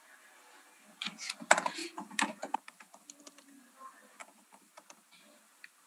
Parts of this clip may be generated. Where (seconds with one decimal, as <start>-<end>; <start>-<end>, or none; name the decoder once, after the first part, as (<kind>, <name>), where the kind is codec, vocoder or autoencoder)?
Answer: 1.8-3.2 (vocoder, BigVGAN v2); 4.2-4.8